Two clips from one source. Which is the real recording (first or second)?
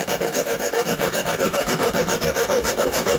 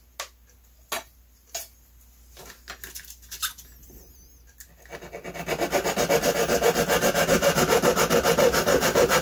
second